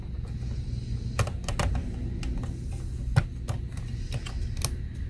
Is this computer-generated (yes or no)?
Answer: no